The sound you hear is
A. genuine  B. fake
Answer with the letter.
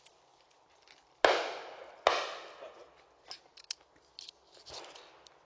A